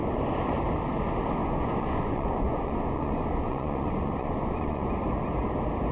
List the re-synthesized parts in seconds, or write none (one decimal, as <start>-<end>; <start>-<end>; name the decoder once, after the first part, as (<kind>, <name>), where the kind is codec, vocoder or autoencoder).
1.4-4.9 (vocoder, Vocos)